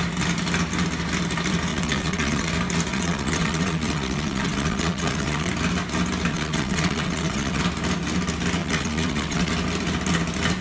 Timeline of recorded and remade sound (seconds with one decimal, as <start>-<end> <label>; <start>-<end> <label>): 0.0-1.7 recorded; 1.7-2.5 remade; 2.5-2.9 recorded; 2.9-5.5 remade; 5.5-6.3 recorded; 6.3-7.6 remade; 7.6-8.6 recorded; 8.6-9.5 remade; 9.5-10.6 recorded